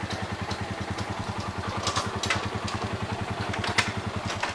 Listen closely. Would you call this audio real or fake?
real